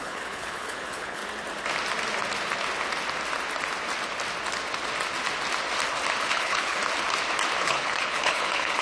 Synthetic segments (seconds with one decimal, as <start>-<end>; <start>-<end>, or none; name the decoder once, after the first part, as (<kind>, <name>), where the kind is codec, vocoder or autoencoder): 0.0-1.2 (codec, HILCodec); 6.3-6.8; 7.6-8.8

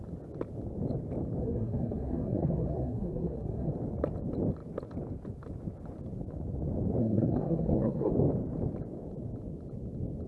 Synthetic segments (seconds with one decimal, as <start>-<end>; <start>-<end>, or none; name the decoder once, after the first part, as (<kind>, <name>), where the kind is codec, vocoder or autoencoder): 1.4-3.7 (codec, SNAC); 7.0-8.1

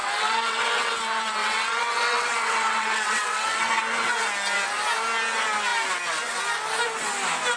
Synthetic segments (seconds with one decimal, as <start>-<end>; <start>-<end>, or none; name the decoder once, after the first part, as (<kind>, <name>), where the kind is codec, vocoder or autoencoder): 0.0-0.9 (vocoder, WaveNeXt); 1.4-3.8